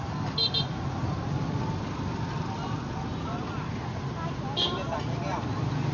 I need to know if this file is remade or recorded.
recorded